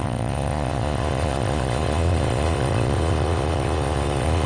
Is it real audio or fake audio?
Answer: fake